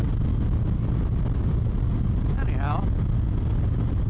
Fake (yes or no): no